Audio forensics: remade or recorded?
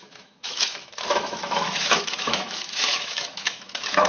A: remade